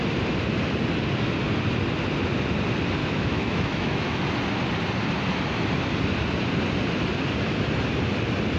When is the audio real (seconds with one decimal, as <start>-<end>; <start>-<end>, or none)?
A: 0.0-3.0; 4.3-8.6